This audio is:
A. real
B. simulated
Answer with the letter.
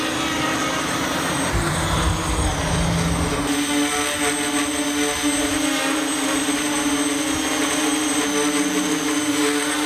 A